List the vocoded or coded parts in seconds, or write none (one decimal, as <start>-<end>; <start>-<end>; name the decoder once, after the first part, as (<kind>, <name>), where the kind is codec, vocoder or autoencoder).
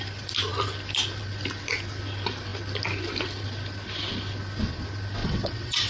5.2-5.9 (vocoder, WaveNeXt)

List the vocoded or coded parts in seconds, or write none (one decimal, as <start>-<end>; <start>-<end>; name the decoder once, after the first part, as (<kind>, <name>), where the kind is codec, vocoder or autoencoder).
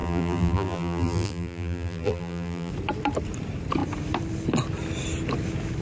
0.0-2.7 (vocoder, BigVGAN v2)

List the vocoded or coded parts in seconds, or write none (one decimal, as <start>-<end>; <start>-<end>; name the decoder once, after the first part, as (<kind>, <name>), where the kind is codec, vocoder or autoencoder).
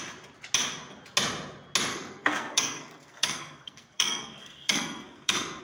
1.9-5.6 (codec, SNAC)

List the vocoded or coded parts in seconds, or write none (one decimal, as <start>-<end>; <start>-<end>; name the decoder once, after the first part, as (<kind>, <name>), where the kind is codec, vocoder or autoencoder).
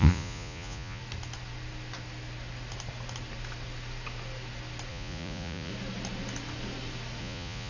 0.0-1.0 (vocoder, Vocos); 4.9-5.7; 7.2-7.7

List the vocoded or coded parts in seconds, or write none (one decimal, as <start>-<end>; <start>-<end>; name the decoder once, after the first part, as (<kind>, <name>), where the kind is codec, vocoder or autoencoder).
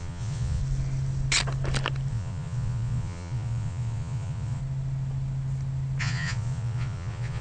0.0-0.6 (vocoder, Vocos); 2.1-4.6; 6.0-7.4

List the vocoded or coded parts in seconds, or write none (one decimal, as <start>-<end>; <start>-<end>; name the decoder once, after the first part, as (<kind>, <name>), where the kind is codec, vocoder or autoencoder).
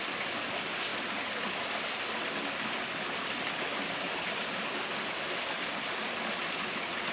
none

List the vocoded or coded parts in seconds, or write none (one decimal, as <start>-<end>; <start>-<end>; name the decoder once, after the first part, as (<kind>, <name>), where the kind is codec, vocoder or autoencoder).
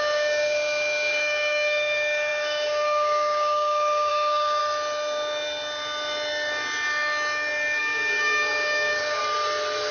0.0-4.6 (codec, DAC); 7.8-9.2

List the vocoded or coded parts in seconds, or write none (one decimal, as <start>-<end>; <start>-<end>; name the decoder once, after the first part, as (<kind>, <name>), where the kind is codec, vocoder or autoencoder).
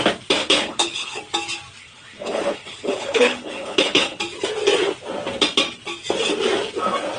0.4-1.2 (codec, HILCodec); 1.8-4.2